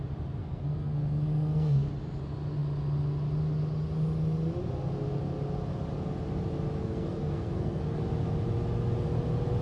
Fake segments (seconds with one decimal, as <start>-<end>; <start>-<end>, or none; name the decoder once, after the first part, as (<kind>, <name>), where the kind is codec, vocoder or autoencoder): 0.4-1.9 (codec, SNAC); 6.8-7.8